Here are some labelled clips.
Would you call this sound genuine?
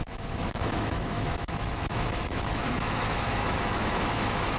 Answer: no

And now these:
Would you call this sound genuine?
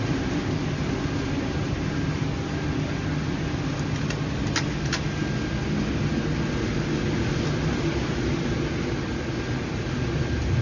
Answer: yes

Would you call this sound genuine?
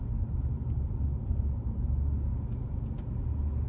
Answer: yes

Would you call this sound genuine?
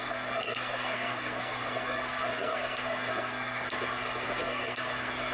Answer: no